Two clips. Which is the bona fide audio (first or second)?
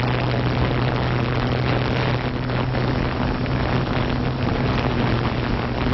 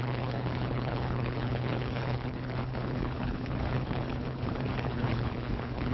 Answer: first